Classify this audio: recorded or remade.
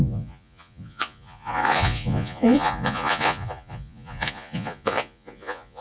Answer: remade